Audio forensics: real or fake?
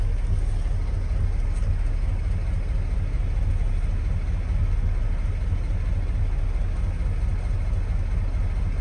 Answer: real